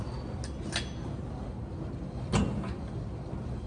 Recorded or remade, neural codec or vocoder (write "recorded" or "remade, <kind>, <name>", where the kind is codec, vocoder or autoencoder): recorded